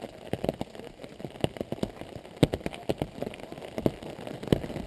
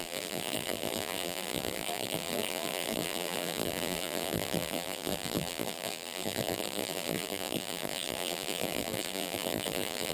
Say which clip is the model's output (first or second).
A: second